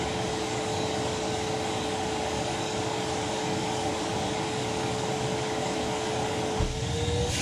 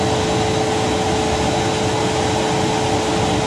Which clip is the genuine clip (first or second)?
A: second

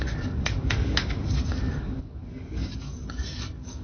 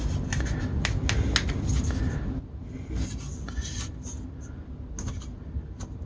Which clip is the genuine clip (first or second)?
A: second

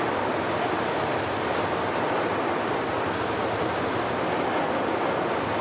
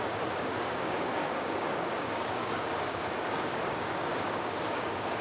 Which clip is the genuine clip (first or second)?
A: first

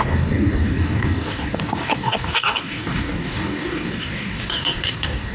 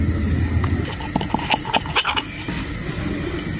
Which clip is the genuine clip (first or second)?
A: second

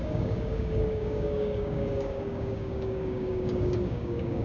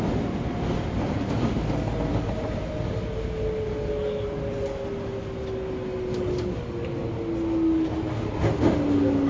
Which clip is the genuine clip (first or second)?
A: second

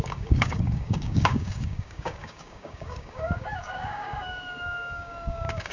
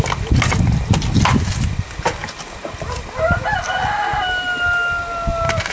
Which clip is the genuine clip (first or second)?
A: second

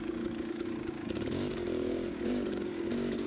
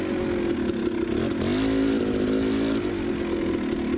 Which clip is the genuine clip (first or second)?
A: second